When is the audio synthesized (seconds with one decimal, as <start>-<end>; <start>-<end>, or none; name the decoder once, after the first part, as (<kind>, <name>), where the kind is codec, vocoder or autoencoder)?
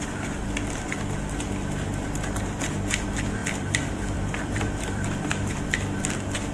3.4-5.3 (vocoder, BigVGAN v2)